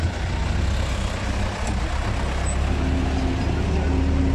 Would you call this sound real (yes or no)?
yes